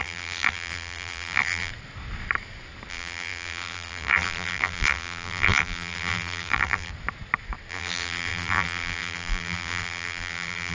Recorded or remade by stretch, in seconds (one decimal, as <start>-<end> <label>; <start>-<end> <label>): 0.0-1.7 remade; 1.7-2.9 recorded; 2.9-6.9 remade; 6.9-7.7 recorded; 7.7-10.7 remade